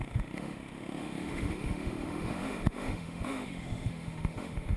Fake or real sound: fake